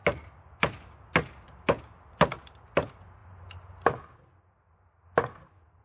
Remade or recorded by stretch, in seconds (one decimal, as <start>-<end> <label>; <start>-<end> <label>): 0.0-5.8 recorded